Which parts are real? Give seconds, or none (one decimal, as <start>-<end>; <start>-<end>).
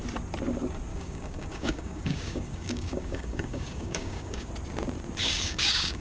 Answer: 0.0-0.9; 4.5-5.2